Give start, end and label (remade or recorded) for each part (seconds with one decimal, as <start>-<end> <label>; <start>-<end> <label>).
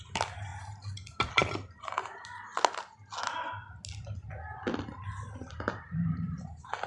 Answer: 0.0-0.5 remade; 0.5-1.3 recorded; 1.3-2.5 remade; 2.5-5.6 recorded; 5.6-6.9 remade